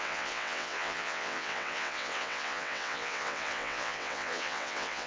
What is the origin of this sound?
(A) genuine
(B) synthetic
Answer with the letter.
B